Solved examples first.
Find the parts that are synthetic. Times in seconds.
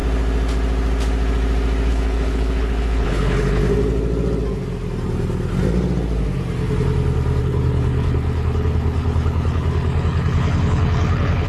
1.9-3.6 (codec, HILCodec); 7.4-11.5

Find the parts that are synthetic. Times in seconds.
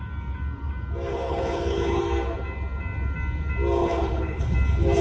1.1-2.0 (codec, HILCodec); 3.8-4.5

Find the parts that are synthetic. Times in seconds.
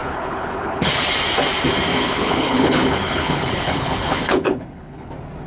0.0-1.1 (codec, HILCodec); 1.9-5.1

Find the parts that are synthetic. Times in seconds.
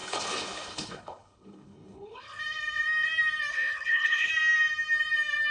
0.0-2.4 (codec, HILCodec); 3.5-4.3